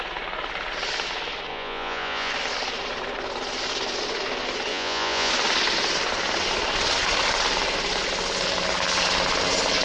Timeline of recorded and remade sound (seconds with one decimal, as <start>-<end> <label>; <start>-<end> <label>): 0.0-1.5 recorded; 1.5-2.3 remade; 2.3-4.7 recorded; 4.7-5.3 remade; 5.3-9.8 recorded